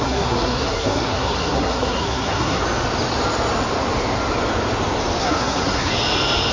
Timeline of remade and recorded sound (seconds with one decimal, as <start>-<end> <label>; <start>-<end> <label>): 0.0-2.6 remade; 2.6-5.2 recorded; 5.2-5.9 remade; 5.9-6.5 recorded